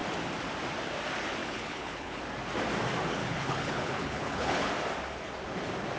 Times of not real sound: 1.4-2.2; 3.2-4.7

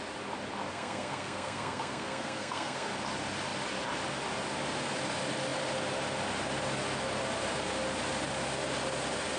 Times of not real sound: 0.7-2.9

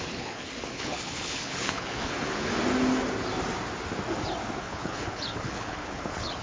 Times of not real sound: 0.0-2.5; 4.6-6.4

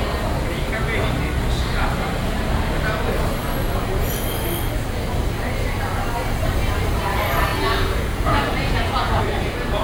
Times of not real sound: 7.5-9.2